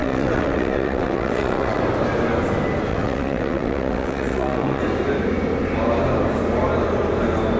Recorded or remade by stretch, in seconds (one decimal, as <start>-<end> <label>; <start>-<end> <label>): 0.0-1.8 remade; 1.8-2.9 recorded; 2.9-4.8 remade; 4.8-7.6 recorded